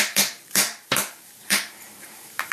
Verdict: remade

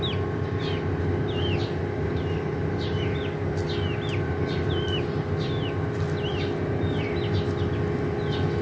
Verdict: recorded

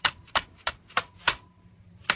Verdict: remade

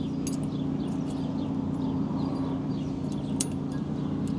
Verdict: recorded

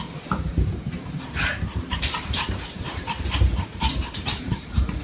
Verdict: remade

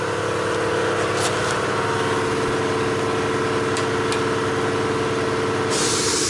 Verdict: recorded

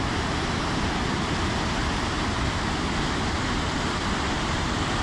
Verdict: remade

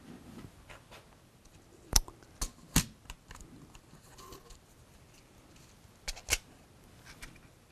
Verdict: recorded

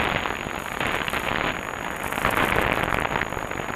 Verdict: recorded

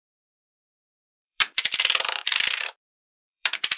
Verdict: remade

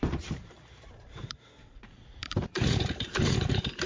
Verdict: remade